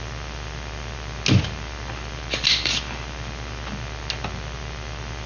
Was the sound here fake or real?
real